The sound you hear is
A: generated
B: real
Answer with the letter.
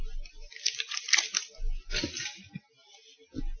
B